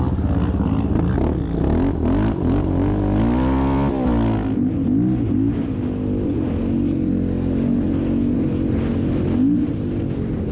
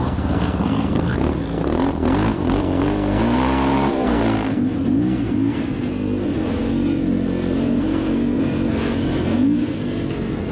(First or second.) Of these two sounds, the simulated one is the second